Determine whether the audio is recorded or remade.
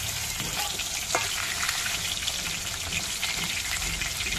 remade